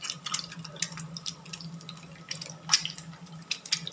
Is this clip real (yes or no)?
yes